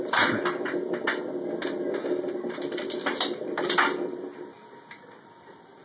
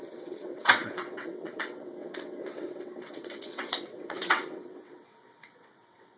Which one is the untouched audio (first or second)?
first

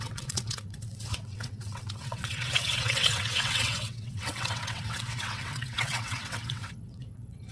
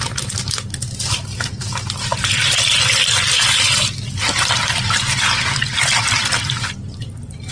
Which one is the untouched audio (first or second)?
second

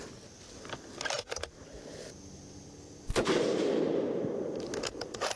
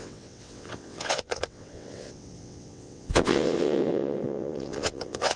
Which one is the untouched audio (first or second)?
first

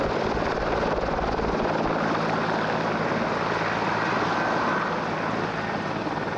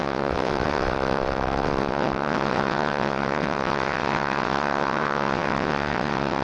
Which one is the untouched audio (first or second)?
first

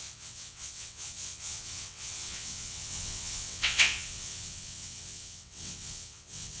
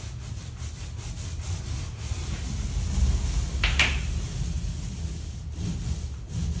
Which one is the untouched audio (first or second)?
second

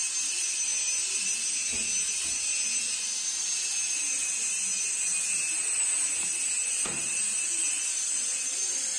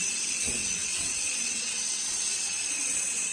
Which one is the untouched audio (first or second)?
first